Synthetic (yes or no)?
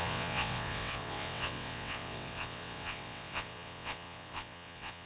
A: yes